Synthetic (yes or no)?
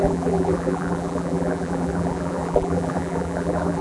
yes